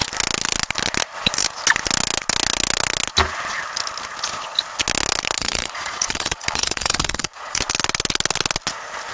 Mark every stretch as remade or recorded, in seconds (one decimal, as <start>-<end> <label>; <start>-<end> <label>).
0.0-5.4 recorded; 5.4-7.6 remade; 7.6-9.1 recorded